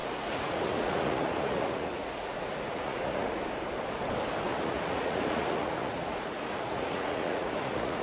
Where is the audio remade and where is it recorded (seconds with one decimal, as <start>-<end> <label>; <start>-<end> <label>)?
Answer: 0.0-3.4 remade; 3.4-4.5 recorded; 4.5-8.0 remade